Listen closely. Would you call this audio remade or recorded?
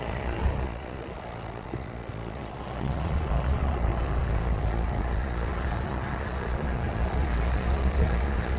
remade